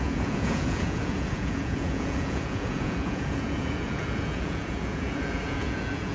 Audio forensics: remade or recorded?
remade